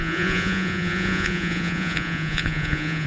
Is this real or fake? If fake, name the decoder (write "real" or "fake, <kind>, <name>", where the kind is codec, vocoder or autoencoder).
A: fake, vocoder, Vocos